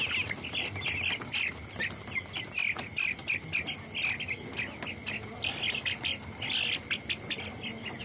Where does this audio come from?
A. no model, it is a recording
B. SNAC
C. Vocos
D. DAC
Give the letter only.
A